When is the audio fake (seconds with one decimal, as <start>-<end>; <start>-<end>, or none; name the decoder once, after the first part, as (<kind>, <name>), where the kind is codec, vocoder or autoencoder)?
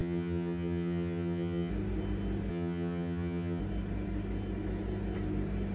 0.0-1.7 (vocoder, HiFi-GAN); 2.5-3.6